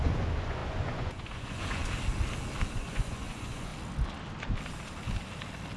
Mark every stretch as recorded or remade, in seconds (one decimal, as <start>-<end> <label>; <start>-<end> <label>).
0.0-1.8 remade; 1.8-2.7 recorded; 2.7-3.7 remade; 3.7-5.8 recorded